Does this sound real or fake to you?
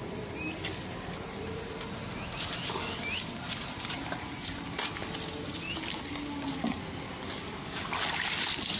real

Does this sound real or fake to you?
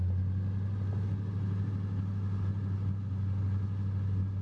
real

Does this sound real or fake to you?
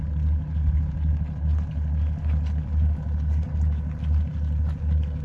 real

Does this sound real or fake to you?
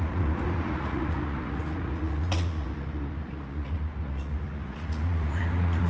fake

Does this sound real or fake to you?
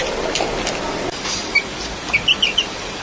real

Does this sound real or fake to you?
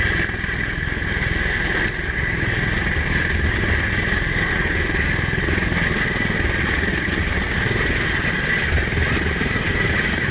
real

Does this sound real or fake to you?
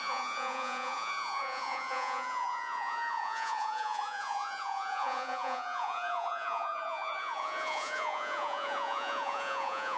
fake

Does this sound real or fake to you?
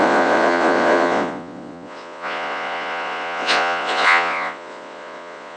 fake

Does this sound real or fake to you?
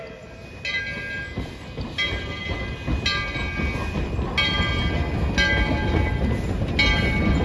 real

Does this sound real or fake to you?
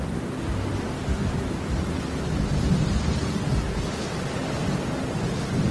real